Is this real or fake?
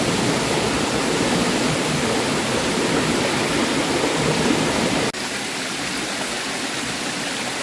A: real